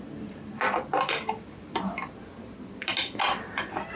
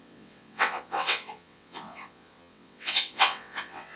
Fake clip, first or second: second